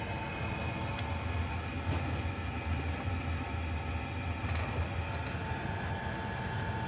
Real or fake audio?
real